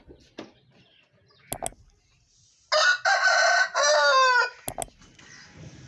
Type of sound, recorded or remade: recorded